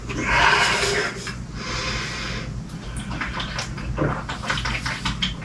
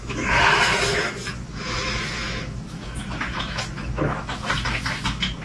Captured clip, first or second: first